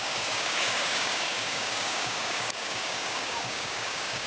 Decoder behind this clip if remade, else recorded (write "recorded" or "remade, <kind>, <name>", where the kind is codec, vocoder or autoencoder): remade, codec, DAC